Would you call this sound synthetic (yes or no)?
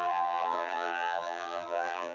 yes